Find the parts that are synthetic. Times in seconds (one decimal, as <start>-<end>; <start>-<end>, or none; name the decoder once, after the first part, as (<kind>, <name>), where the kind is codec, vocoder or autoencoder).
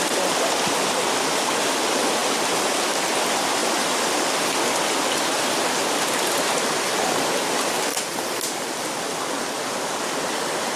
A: 3.6-4.5 (vocoder, BigVGAN v2); 7.9-9.0